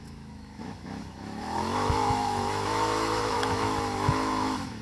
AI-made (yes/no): yes